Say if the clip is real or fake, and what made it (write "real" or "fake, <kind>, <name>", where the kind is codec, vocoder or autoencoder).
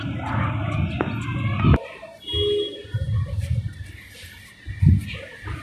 real